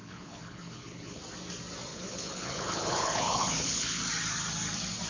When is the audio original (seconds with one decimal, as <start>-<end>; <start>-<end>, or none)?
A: 1.2-1.9; 4.0-5.1